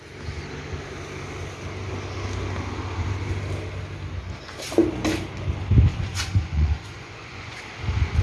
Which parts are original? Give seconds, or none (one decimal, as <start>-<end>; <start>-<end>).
0.0-5.9; 7.6-8.2